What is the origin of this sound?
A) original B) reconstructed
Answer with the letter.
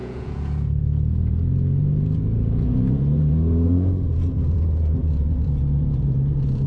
B